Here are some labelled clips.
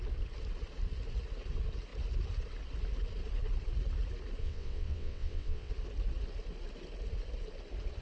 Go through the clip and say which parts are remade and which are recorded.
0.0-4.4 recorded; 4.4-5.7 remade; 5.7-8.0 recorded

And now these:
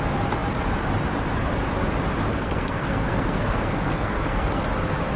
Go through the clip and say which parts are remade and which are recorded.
0.0-2.3 recorded; 2.3-4.6 remade; 4.6-5.2 recorded

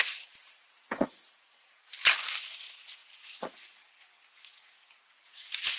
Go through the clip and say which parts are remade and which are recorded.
0.0-1.8 remade; 1.8-2.4 recorded; 2.4-5.8 remade